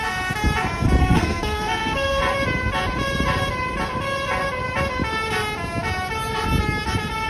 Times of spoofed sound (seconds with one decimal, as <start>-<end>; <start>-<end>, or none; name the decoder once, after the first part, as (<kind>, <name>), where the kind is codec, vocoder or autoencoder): 1.0-2.2 (codec, SNAC)